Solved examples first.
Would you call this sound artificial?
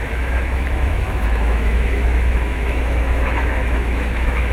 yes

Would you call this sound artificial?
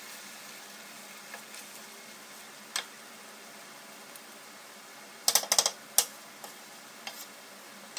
no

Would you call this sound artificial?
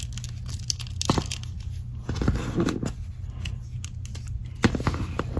no